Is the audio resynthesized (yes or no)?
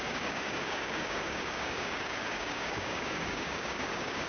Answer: yes